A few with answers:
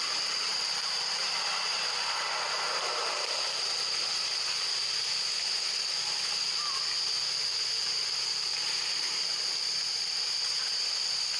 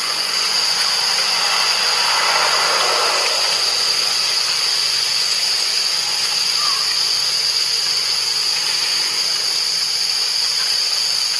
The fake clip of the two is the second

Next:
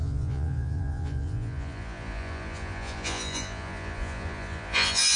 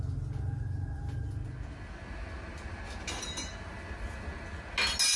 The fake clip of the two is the first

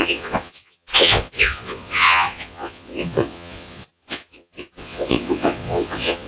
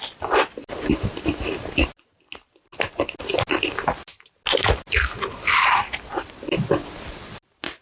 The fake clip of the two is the first